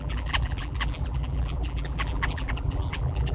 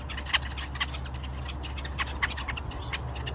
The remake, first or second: first